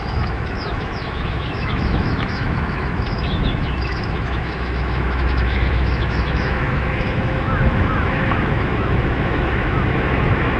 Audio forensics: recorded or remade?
remade